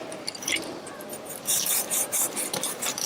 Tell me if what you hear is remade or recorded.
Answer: remade